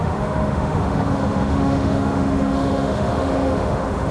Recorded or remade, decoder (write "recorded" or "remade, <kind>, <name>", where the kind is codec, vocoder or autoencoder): remade, autoencoder, DAC-VAE